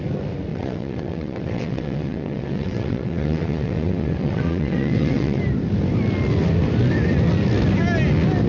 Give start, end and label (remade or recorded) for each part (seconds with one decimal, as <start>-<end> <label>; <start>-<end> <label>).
0.0-0.5 recorded; 0.5-5.4 remade; 5.4-8.5 recorded